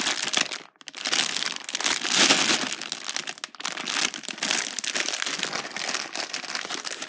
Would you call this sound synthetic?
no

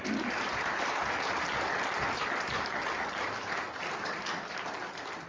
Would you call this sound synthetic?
no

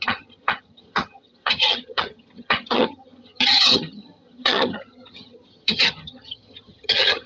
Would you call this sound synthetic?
yes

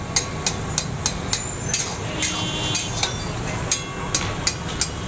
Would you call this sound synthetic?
no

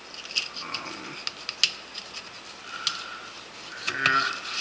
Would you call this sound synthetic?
no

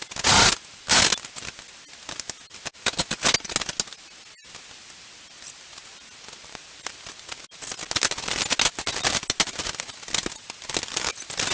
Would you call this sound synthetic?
no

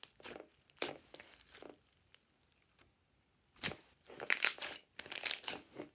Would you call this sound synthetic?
no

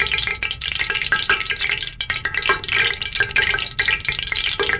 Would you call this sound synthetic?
no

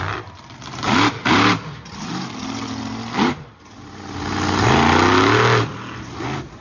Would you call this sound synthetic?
no